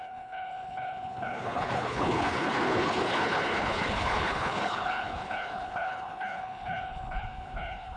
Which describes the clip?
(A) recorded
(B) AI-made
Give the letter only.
B